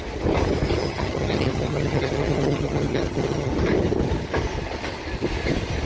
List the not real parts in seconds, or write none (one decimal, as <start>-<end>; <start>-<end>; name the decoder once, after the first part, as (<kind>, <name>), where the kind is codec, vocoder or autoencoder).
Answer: 0.8-3.5 (vocoder, HiFi-GAN)